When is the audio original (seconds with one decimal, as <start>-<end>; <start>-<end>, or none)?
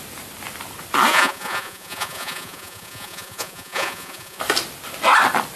0.0-1.1; 4.4-5.6